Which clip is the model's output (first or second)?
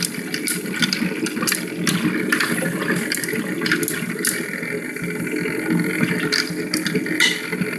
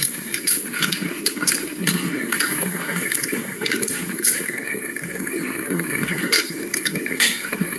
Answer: second